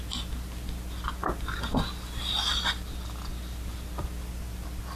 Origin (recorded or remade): recorded